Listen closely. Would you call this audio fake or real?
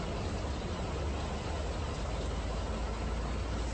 real